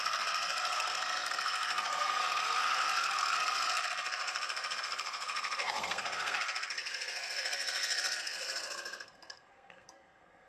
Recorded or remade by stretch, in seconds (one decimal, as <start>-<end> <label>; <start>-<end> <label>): 0.0-10.5 remade